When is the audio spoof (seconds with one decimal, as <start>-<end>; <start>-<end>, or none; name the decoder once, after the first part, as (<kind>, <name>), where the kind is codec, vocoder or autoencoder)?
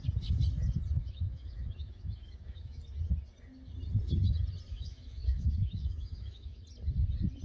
1.0-2.8 (autoencoder, DAC-VAE); 4.7-6.6